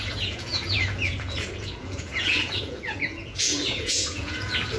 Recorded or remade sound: remade